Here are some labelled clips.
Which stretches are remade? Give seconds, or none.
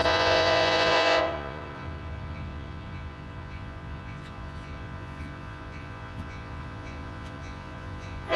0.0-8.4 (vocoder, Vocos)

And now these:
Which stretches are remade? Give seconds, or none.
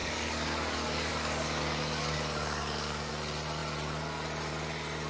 0.0-3.1 (codec, DAC)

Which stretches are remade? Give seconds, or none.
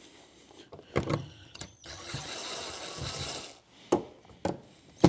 1.1-2.3 (vocoder, HiFi-GAN)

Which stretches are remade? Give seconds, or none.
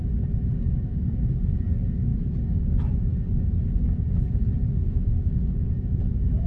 none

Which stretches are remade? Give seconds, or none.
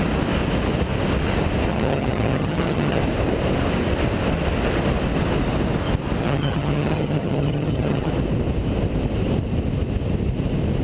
1.7-3.0 (vocoder, HiFi-GAN); 6.2-8.1